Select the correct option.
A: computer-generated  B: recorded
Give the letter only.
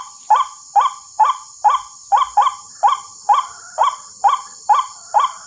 B